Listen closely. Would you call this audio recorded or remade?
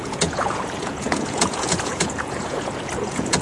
remade